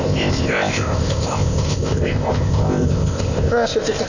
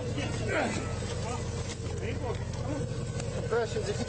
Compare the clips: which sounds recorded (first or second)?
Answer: second